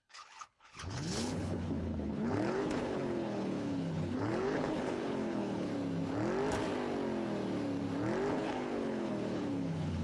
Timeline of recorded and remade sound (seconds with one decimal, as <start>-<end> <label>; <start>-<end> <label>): 0.0-5.7 remade; 5.7-8.3 recorded; 8.3-10.0 remade